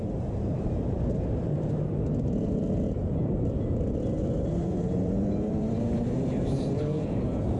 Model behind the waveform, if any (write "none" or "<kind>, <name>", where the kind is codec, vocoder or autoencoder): vocoder, BigVGAN v2